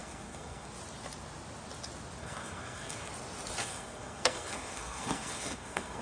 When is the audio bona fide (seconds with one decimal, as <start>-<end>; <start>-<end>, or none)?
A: 0.7-2.2; 3.1-3.6